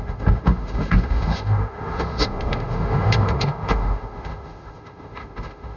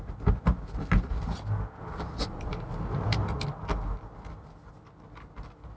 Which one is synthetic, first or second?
first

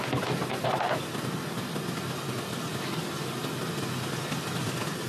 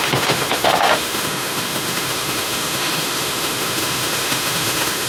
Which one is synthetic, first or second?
second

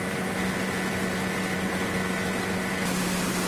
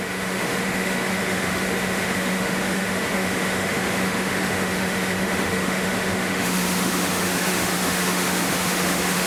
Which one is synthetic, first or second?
second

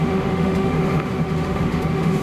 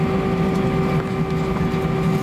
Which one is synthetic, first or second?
first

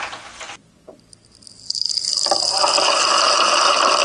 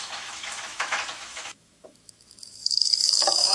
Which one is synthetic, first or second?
second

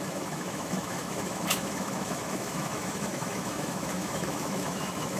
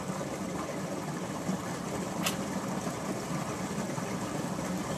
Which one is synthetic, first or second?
first